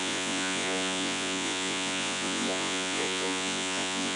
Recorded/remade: remade